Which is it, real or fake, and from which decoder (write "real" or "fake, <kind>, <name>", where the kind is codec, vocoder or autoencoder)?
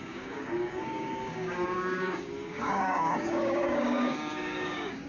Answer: fake, codec, DAC